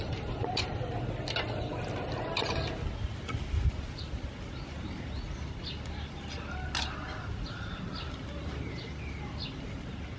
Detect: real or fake real